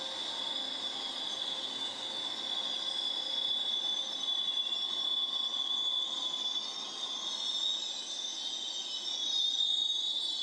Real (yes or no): yes